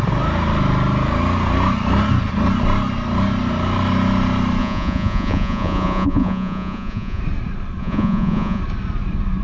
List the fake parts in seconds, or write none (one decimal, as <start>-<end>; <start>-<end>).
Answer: 4.6-7.2; 7.8-8.6